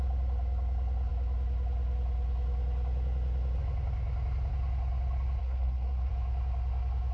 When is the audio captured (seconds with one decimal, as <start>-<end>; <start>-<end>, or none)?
0.0-5.4; 6.1-7.1